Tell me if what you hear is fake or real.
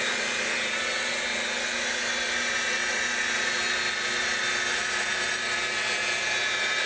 real